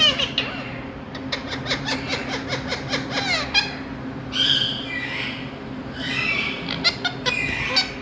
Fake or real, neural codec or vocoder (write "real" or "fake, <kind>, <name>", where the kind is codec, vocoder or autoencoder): real